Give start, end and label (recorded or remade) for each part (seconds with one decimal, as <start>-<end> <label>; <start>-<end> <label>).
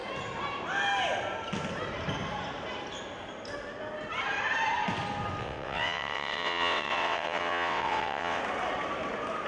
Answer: 0.0-5.4 recorded; 5.4-8.4 remade; 8.4-9.5 recorded